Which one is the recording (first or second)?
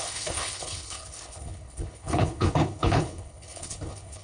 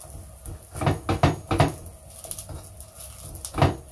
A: second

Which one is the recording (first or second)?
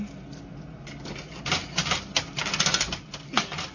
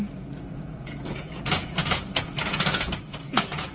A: first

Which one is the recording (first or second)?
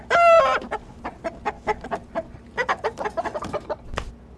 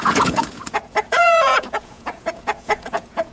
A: first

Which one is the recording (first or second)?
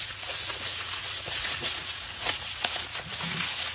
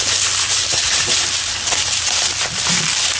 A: second